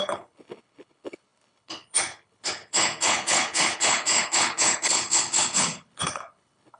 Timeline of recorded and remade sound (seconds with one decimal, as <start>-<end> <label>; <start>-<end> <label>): 0.0-6.8 remade